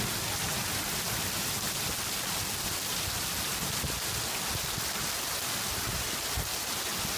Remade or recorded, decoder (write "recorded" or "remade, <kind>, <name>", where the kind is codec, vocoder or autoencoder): recorded